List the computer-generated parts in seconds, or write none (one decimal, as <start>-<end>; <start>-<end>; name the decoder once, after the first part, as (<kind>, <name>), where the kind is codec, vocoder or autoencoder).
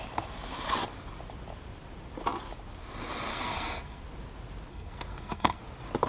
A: 3.3-4.0 (codec, SNAC); 4.7-5.6